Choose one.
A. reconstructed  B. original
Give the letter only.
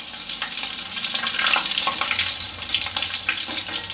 B